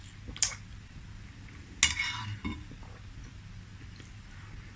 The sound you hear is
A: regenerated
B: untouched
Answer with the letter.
B